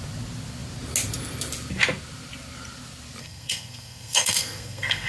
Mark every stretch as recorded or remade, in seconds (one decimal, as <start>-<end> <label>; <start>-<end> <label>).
0.0-3.2 recorded; 3.2-5.1 remade